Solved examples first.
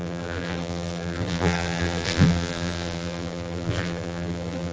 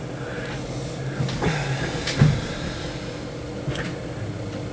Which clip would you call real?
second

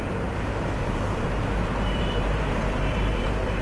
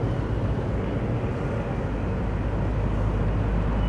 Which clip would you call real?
second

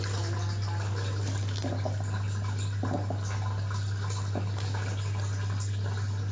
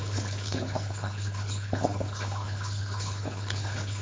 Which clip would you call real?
first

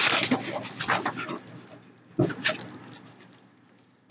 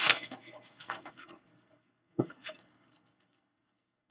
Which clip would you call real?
first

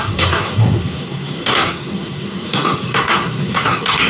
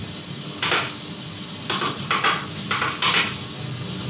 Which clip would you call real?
second